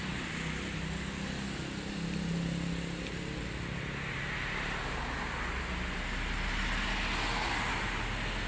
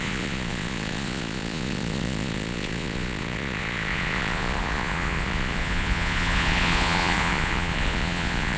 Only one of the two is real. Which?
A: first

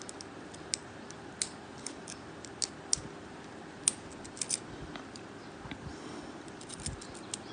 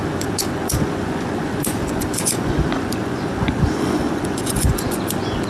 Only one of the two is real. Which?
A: first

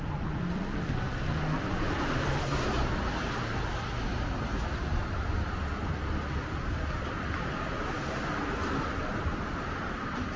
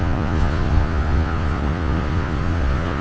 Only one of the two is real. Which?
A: first